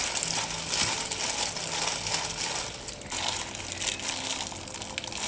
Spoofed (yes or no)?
no